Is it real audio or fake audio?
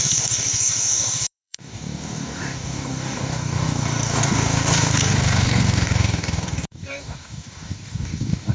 fake